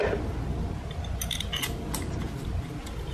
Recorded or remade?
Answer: recorded